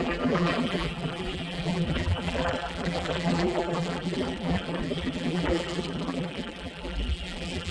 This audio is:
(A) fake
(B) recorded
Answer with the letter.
A